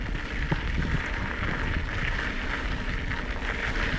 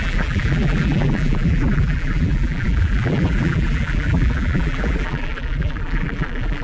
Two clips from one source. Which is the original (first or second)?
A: first